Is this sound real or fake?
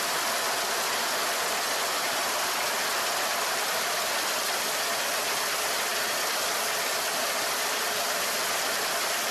real